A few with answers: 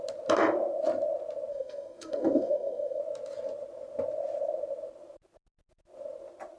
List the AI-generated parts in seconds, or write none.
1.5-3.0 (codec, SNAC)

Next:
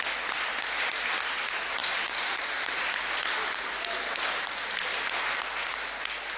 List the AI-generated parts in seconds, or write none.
1.8-2.8 (vocoder, BigVGAN v2)

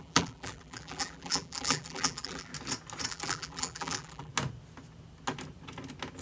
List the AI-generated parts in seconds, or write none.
0.0-2.5 (vocoder, BigVGAN v2); 3.1-4.3